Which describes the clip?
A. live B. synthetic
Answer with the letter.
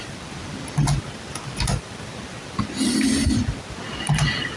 A